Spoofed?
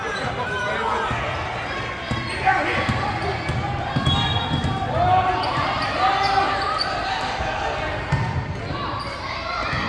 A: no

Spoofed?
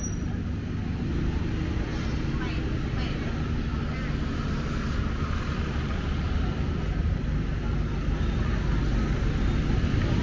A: no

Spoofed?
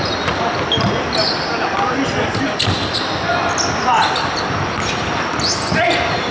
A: no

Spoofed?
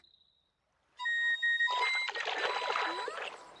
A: no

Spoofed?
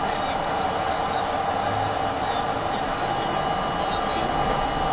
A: no